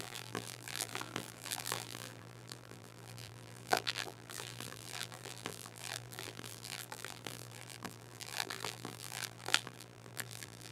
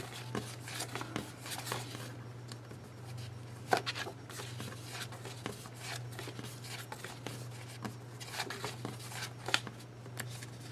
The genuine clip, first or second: second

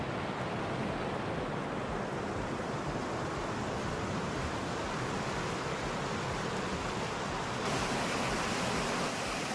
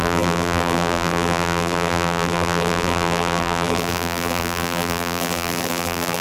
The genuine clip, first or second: first